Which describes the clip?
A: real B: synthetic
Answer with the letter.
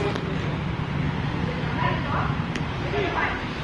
A